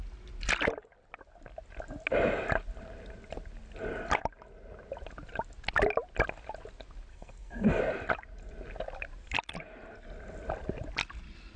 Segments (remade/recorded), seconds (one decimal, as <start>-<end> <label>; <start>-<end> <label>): 0.0-7.1 recorded; 7.1-7.8 remade; 7.8-11.6 recorded